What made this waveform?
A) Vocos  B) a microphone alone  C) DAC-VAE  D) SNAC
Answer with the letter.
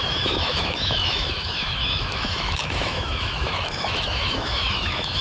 C